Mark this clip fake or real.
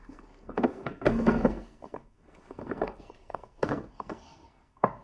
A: fake